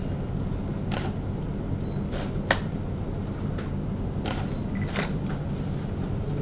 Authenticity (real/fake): real